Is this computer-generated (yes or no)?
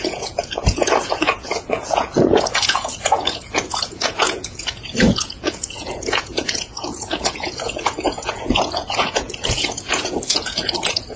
yes